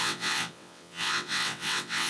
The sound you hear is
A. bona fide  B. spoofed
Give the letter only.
B